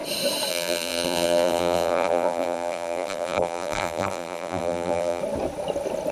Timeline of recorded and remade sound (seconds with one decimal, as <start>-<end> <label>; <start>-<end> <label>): 0.0-0.5 recorded; 0.5-5.2 remade; 5.2-6.1 recorded